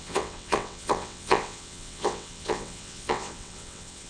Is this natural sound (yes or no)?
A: no